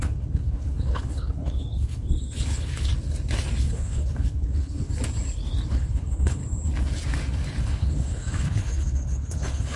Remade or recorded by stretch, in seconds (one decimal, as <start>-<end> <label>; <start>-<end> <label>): 0.0-2.9 remade; 2.9-3.6 recorded; 3.6-4.9 remade; 4.9-5.7 recorded; 5.7-6.4 remade; 6.4-7.6 recorded; 7.6-9.8 remade